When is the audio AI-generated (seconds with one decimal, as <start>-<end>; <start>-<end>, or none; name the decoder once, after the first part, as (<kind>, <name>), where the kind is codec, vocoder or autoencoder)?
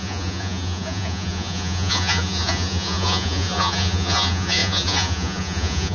0.0-5.9 (vocoder, Vocos)